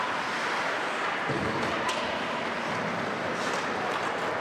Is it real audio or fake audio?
fake